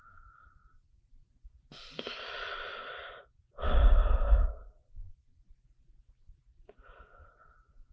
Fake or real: real